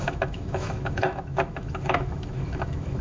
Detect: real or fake fake